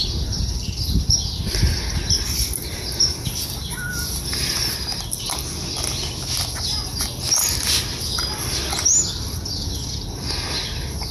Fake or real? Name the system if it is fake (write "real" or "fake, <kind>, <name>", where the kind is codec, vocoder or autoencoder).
real